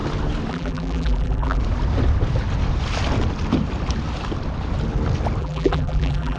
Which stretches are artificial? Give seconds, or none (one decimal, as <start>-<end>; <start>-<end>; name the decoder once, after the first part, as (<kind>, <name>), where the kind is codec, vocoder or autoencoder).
0.5-1.6 (vocoder, BigVGAN v2); 5.4-6.4

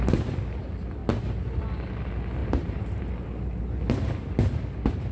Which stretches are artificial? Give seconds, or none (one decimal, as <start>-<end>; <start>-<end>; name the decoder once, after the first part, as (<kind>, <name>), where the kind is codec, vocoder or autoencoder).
2.4-3.0 (vocoder, BigVGAN v2)

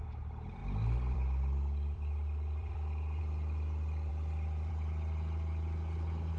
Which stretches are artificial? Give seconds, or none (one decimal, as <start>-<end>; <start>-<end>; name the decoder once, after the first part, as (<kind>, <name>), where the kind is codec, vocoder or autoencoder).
0.6-3.2 (vocoder, BigVGAN v2); 4.1-4.7

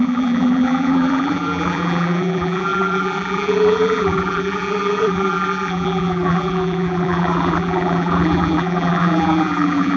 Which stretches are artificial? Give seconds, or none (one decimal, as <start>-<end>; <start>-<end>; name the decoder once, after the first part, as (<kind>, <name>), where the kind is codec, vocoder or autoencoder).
0.0-10.0 (vocoder, BigVGAN v2)

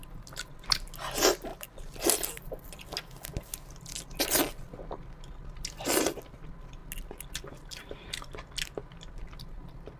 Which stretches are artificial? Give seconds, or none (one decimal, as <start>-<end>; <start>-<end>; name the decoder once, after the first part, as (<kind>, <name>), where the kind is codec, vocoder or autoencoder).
1.5-2.0 (vocoder, BigVGAN v2)